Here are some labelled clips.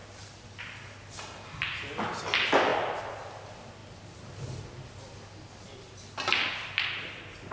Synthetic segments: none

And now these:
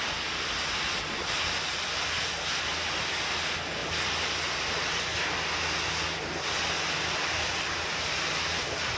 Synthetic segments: none